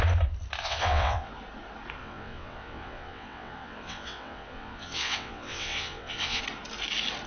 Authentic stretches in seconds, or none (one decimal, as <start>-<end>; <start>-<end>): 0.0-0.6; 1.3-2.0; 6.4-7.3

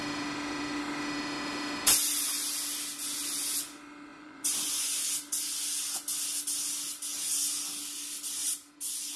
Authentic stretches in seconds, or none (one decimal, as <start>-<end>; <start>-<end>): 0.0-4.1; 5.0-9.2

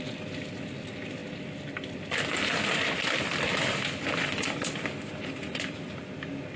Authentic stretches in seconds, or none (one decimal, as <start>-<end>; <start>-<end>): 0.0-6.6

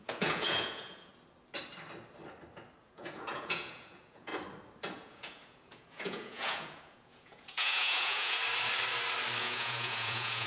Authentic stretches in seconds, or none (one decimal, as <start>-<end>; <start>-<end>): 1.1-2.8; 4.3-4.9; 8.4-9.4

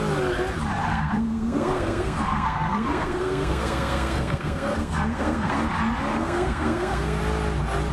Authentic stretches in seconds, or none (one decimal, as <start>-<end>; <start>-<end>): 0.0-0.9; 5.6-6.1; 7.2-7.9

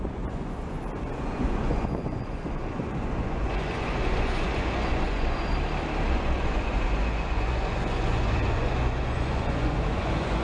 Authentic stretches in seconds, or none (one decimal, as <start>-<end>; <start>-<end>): 5.5-6.1

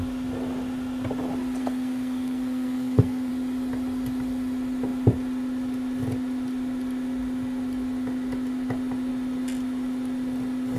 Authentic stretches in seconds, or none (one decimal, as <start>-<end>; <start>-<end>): 0.0-1.6; 3.3-10.8